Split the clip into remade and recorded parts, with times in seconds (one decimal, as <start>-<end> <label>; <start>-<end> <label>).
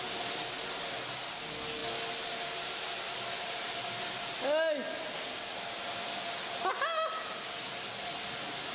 0.0-8.7 recorded